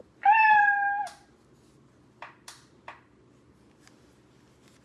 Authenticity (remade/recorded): recorded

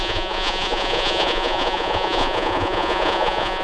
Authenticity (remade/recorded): remade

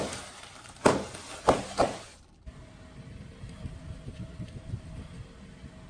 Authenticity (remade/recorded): recorded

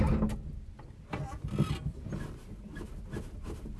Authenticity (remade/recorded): recorded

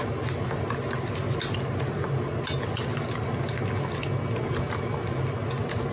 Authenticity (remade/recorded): recorded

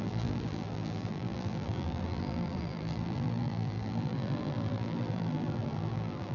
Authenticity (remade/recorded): remade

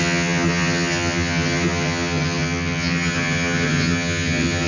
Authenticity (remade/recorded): remade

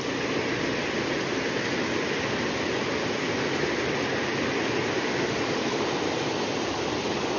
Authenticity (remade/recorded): recorded